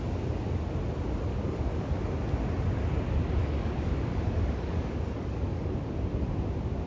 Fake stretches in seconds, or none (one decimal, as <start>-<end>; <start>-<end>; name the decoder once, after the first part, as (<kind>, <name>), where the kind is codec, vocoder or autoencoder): 1.3-2.0 (codec, DAC); 3.4-5.7